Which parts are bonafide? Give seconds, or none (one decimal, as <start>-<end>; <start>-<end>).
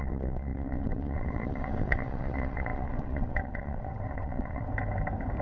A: 4.7-5.4